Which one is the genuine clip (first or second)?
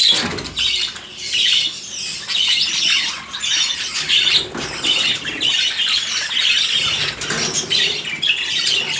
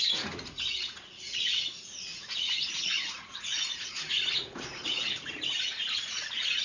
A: first